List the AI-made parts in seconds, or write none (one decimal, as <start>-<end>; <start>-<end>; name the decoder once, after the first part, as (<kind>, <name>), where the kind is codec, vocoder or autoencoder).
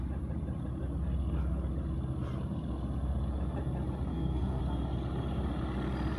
4.1-4.6 (codec, SNAC)